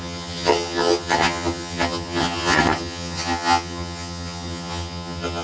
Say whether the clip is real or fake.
fake